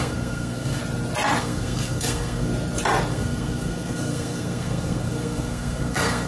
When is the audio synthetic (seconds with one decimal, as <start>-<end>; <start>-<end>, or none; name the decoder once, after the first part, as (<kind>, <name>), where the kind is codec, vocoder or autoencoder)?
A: 0.0-0.8 (codec, SNAC); 1.4-2.5; 3.1-6.3